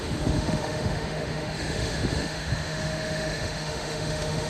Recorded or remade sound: remade